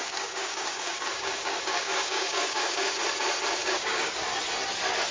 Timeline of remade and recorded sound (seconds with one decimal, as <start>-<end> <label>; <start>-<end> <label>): 0.0-3.0 remade; 3.0-3.6 recorded; 3.6-4.1 remade; 4.1-5.1 recorded